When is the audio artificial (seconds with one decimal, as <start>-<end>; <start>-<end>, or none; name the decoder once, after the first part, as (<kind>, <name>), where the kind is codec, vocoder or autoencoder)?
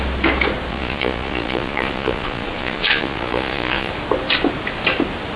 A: 0.7-3.9 (vocoder, Vocos)